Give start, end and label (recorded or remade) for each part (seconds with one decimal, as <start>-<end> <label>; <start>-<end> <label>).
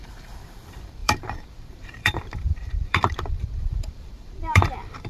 0.0-5.1 remade